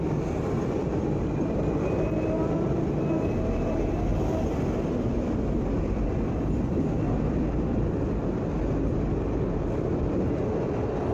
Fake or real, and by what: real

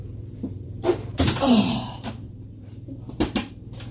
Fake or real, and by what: fake, vocoder, BigVGAN v2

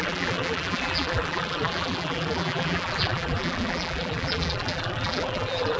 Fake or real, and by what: fake, vocoder, BigVGAN v2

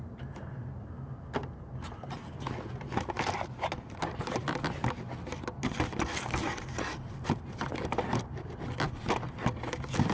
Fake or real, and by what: real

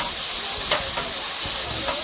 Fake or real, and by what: real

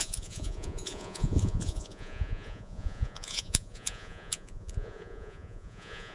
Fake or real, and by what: fake, vocoder, Vocos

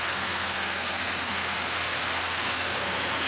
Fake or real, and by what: fake, codec, SNAC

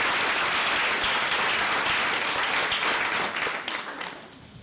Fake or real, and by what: real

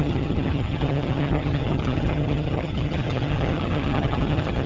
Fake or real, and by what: fake, vocoder, HiFi-GAN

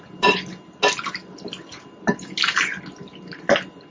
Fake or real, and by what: real